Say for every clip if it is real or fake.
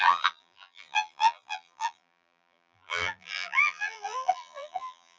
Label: fake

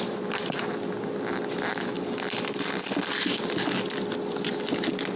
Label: real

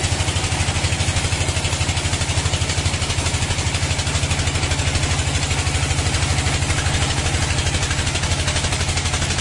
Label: real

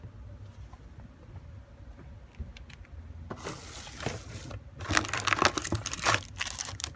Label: real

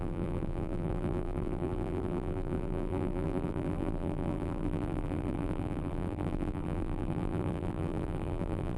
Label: fake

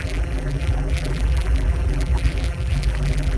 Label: fake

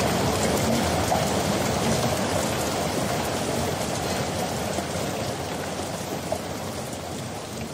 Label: real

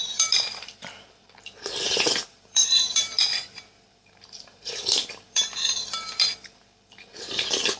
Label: fake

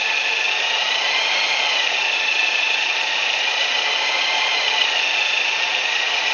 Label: fake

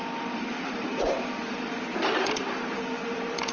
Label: fake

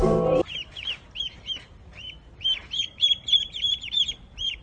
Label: fake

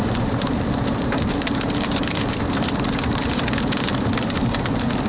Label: fake